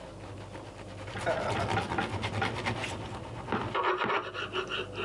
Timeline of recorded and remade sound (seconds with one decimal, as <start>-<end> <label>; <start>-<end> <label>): 0.0-5.0 recorded